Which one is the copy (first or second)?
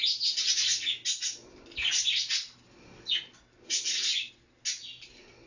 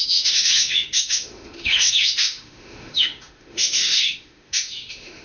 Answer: second